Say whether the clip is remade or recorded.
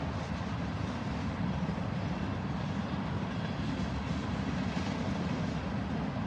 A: recorded